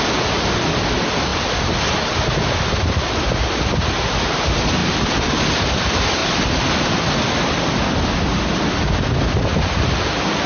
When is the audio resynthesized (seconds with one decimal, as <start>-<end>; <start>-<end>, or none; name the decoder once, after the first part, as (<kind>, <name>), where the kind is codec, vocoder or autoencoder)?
none